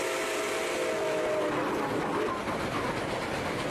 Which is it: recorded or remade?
recorded